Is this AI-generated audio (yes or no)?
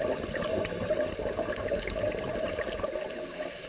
no